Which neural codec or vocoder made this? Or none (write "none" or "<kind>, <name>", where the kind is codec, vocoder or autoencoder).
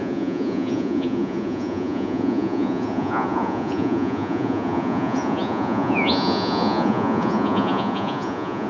vocoder, Vocos